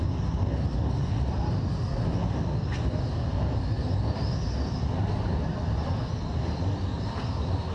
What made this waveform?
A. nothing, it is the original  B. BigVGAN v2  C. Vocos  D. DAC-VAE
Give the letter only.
A